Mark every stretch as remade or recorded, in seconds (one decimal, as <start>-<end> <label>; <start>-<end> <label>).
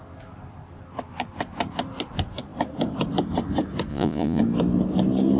0.0-3.9 recorded; 3.9-4.4 remade; 4.4-5.4 recorded